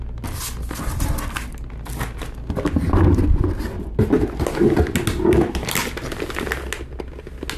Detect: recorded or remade recorded